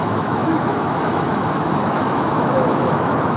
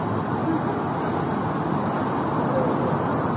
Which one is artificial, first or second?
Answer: first